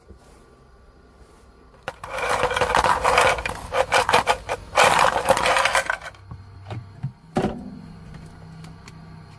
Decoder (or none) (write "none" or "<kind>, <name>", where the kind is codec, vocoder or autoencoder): none